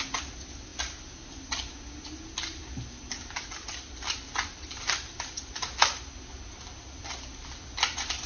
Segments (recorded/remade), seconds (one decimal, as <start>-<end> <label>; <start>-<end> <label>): 0.0-8.3 recorded